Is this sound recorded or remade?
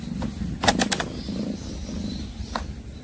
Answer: recorded